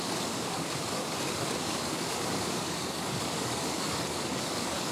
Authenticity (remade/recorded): remade